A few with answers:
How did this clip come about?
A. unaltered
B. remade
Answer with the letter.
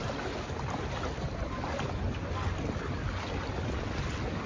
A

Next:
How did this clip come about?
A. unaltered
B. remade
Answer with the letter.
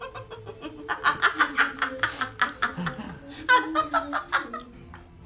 A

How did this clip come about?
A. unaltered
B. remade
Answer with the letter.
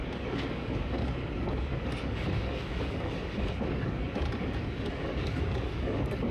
B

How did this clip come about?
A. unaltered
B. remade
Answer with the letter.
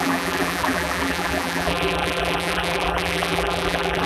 B